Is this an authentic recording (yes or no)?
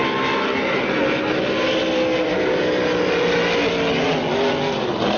yes